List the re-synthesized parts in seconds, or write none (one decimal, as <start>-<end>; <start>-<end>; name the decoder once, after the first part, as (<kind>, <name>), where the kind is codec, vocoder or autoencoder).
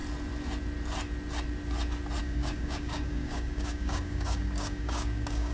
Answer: 2.2-5.5 (codec, DAC)